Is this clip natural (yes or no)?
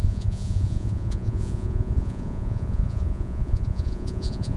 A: no